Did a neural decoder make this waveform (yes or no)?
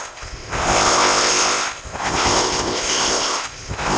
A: yes